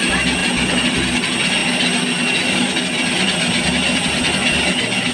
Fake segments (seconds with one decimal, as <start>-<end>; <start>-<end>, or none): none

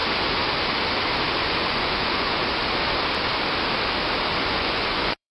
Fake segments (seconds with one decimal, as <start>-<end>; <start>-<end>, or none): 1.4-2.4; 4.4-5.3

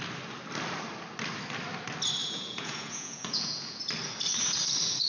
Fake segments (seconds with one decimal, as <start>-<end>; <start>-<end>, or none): 2.2-3.8

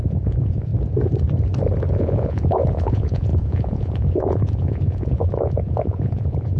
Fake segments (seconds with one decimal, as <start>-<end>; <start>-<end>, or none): 0.0-0.7; 1.9-6.6

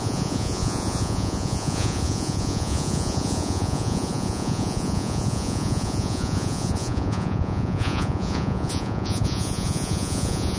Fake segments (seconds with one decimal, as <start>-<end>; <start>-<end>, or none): 0.0-10.6